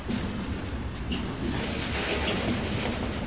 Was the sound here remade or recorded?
recorded